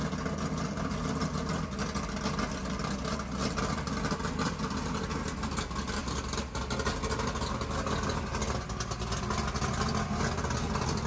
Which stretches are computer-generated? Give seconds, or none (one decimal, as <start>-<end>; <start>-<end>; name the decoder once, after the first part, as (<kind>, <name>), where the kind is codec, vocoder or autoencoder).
none